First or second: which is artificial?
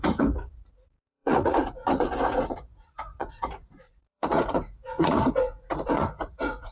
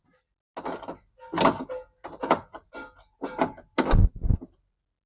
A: first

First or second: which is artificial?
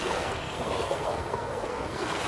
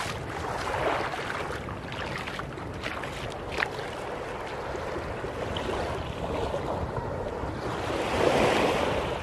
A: first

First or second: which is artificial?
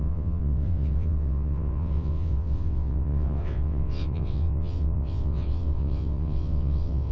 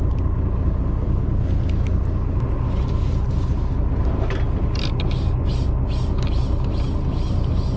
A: first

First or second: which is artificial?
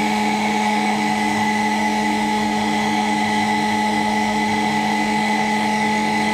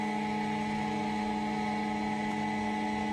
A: first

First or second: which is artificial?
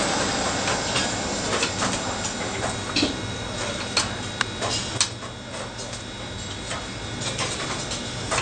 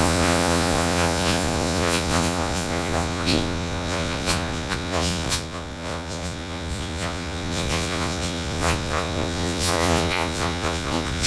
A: second